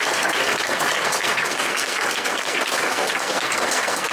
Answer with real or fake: fake